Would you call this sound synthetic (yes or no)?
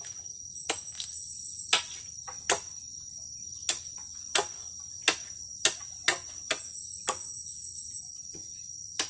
no